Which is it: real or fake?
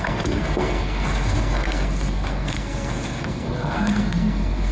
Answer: fake